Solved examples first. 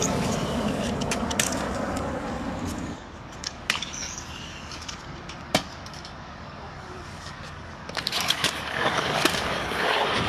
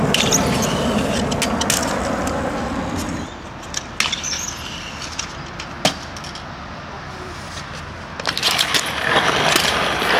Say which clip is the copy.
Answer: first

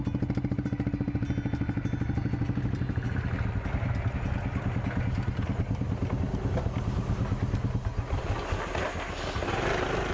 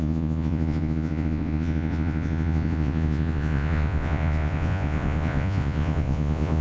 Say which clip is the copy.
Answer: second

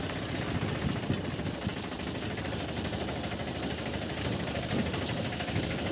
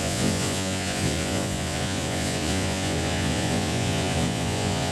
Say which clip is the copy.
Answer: second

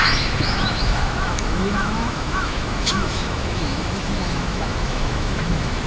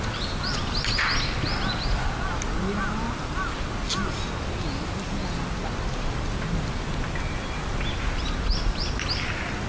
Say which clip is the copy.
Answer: first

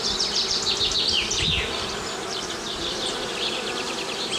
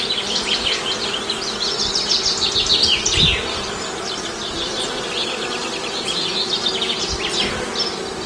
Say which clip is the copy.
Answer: first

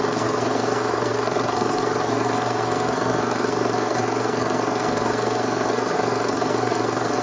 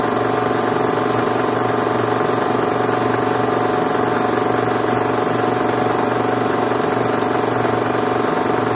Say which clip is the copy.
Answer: first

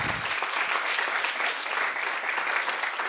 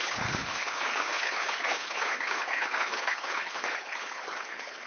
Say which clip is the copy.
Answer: second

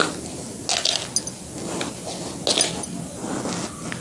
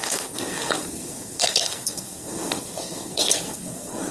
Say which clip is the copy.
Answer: second